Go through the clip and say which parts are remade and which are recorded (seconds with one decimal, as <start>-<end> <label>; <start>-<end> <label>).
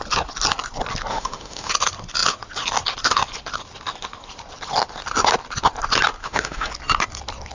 0.0-1.1 recorded; 1.1-1.7 remade; 1.7-6.2 recorded; 6.2-6.7 remade; 6.7-7.5 recorded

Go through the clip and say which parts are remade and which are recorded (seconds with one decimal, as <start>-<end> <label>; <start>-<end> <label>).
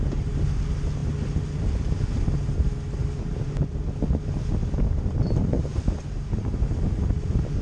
0.0-7.6 recorded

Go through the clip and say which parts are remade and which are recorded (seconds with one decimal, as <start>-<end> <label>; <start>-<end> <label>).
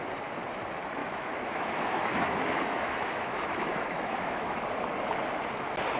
0.0-1.0 recorded; 1.0-4.6 remade; 4.6-6.0 recorded